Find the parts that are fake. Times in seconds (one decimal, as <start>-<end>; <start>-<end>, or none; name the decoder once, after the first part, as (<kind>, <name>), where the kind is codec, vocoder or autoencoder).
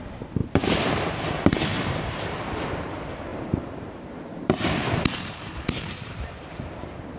0.4-1.2 (vocoder, BigVGAN v2); 1.7-2.9; 3.3-6.6